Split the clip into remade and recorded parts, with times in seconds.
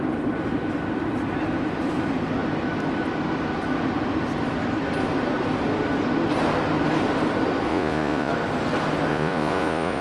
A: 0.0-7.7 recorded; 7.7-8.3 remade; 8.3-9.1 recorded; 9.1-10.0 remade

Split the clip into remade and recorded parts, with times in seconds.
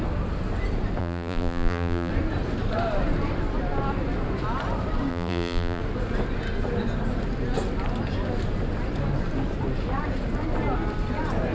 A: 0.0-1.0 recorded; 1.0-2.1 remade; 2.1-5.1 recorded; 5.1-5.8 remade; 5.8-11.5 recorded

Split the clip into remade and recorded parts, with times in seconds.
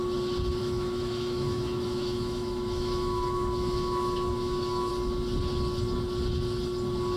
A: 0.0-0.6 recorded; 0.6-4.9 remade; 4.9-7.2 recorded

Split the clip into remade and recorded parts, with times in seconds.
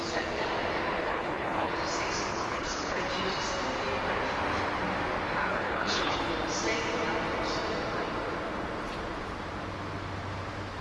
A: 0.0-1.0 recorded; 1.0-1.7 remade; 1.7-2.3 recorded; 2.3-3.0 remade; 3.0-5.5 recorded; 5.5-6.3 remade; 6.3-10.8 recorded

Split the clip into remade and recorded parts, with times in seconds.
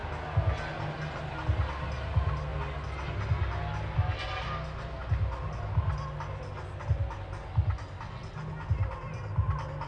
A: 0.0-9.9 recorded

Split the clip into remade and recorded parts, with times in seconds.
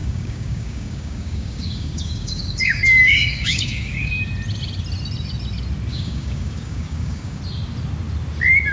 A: 0.0-4.1 remade; 4.1-5.9 recorded; 5.9-7.4 remade; 7.4-8.7 recorded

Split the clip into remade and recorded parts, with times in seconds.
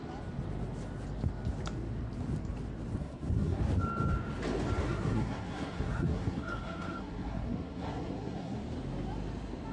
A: 0.0-3.0 recorded; 3.0-3.6 remade; 3.6-4.8 recorded; 4.8-8.6 remade; 8.6-9.7 recorded